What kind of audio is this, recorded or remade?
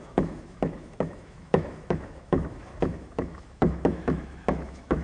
remade